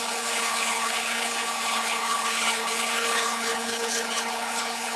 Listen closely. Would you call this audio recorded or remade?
remade